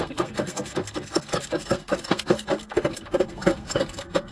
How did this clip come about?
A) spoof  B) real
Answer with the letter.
A